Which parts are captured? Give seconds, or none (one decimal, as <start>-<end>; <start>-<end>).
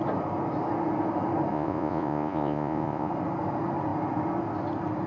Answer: 0.0-1.5; 3.1-5.1